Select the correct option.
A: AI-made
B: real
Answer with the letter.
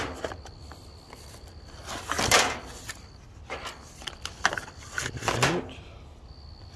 B